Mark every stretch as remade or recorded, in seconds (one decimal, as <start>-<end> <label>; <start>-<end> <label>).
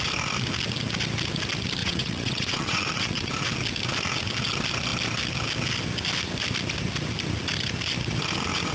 0.0-1.8 recorded; 1.8-3.3 remade; 3.3-8.7 recorded